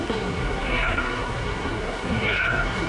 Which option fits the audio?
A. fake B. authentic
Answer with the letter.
A